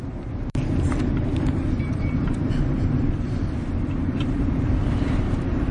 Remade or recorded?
remade